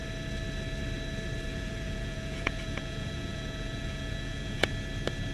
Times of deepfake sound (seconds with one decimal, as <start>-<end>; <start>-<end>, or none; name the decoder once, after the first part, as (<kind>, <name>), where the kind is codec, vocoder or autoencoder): 1.5-4.7 (vocoder, Vocos)